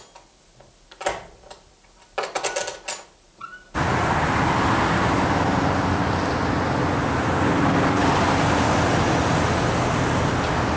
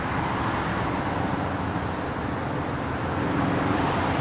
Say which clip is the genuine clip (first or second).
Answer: first